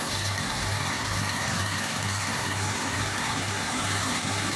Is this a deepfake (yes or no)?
yes